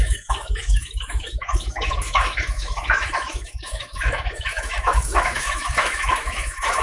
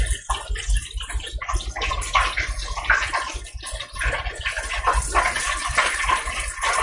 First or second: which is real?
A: second